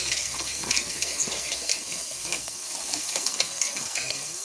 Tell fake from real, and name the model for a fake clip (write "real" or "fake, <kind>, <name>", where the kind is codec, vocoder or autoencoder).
fake, codec, SNAC